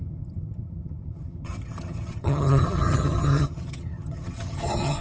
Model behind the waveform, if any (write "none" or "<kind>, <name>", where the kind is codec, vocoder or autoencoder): vocoder, HiFi-GAN